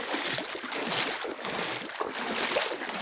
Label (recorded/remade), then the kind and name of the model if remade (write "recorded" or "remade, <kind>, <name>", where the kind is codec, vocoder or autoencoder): recorded